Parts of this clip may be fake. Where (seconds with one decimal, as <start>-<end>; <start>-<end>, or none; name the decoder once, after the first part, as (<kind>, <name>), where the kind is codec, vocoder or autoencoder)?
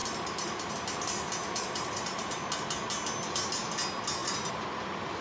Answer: 0.0-0.7 (vocoder, BigVGAN v2); 1.4-2.4; 4.2-5.2